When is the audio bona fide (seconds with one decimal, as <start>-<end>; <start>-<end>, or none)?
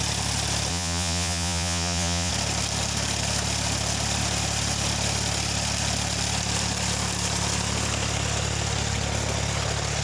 0.0-0.7; 2.3-10.0